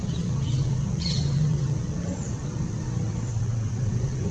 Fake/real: fake